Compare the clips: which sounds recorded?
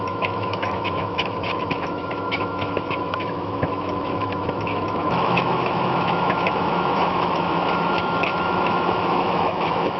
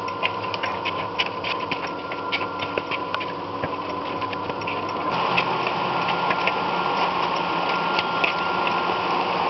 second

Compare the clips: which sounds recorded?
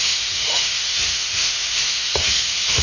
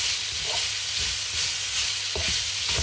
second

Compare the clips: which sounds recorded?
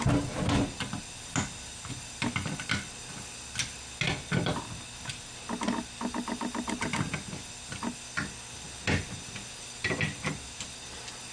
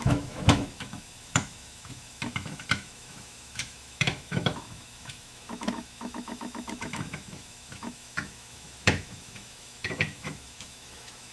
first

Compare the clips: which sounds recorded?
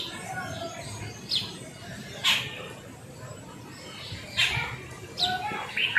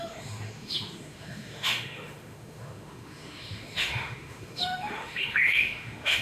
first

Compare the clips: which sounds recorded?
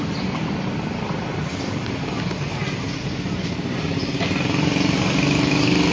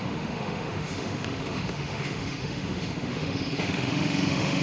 first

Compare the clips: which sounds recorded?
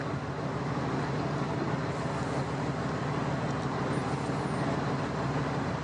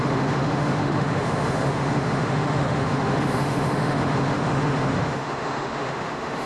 first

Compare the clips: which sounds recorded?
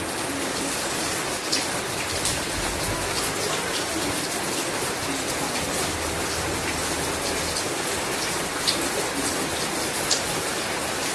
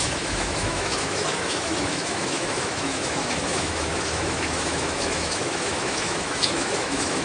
first